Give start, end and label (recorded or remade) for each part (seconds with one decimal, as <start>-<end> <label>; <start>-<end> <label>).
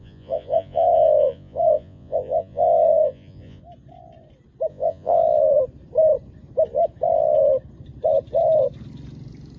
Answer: 0.0-3.6 remade; 3.6-4.7 recorded; 4.7-5.2 remade; 5.2-9.6 recorded